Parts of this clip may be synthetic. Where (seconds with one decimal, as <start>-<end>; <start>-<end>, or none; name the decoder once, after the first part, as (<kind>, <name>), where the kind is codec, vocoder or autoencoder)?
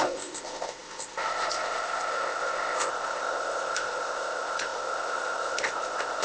0.0-6.2 (codec, ZipCodec)